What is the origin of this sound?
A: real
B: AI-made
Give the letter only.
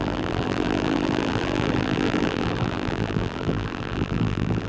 B